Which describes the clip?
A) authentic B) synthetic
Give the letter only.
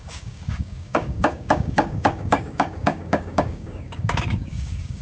B